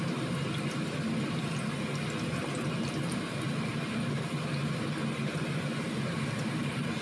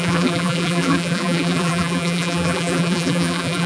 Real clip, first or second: first